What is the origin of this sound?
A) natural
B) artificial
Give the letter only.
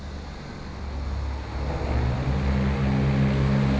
A